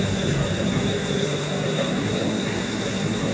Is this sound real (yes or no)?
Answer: no